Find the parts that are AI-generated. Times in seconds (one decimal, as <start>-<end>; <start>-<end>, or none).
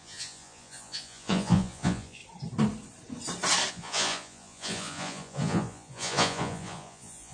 0.0-2.2; 3.7-7.3